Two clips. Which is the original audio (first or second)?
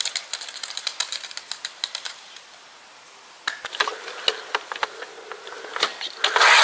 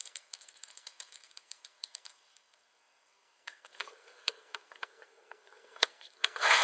first